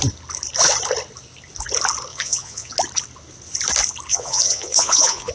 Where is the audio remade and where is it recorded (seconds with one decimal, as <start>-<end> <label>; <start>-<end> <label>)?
0.0-2.1 recorded; 2.1-2.7 remade; 2.7-4.1 recorded; 4.1-5.3 remade